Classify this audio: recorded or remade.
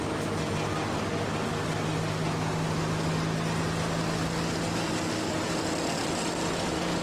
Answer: recorded